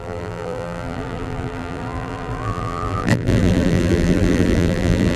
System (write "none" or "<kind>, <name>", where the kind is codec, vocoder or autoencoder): vocoder, BigVGAN v2